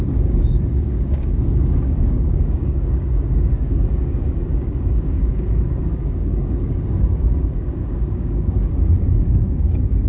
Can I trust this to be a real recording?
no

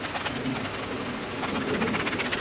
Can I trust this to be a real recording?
yes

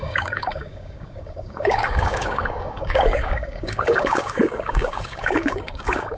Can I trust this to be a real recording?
no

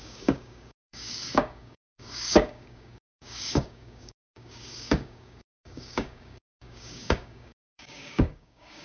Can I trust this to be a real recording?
no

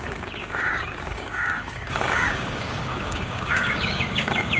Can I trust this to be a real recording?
no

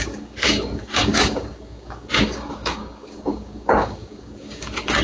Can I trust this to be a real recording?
no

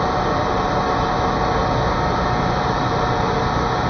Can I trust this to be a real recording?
yes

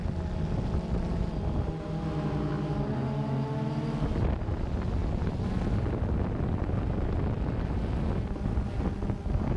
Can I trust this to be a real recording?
yes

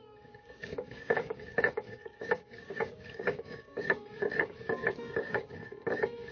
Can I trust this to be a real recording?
no